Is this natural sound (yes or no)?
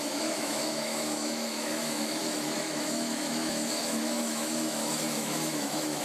no